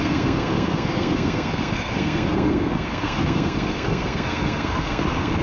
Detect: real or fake fake